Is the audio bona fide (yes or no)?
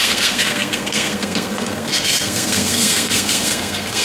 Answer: no